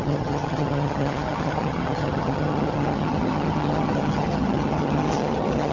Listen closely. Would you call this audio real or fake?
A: fake